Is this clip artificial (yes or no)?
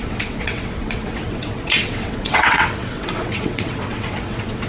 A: yes